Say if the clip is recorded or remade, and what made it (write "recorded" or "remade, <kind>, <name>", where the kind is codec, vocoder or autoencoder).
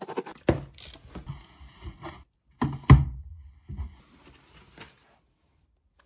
recorded